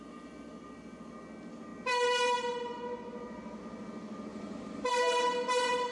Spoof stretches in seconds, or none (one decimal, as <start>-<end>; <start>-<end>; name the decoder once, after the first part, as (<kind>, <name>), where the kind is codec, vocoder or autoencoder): 4.3-4.9 (vocoder, BigVGAN v2)